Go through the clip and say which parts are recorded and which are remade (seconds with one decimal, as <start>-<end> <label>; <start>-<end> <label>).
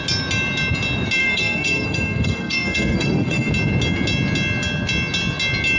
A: 0.0-1.2 recorded; 1.2-3.5 remade; 3.5-5.8 recorded